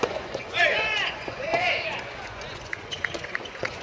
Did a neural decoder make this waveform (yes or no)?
yes